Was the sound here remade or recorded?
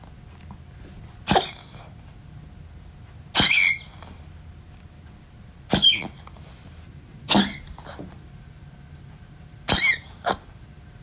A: recorded